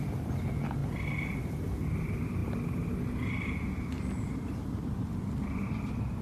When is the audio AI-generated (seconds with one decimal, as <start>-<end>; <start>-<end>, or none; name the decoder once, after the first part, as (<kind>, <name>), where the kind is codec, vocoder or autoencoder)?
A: none